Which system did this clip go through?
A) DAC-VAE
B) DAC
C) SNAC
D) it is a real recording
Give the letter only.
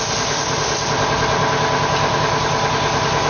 D